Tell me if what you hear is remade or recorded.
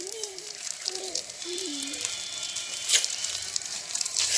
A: remade